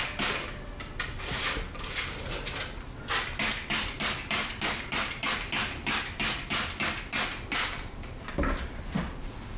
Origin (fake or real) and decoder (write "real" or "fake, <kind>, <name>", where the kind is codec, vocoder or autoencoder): real